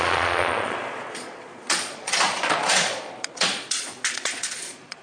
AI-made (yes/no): yes